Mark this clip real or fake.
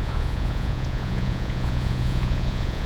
fake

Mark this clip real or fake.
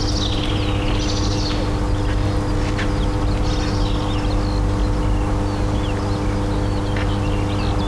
real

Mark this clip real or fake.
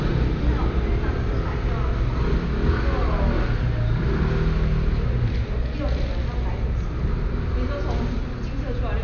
real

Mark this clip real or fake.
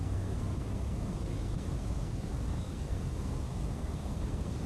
fake